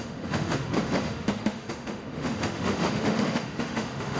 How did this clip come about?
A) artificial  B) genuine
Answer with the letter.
A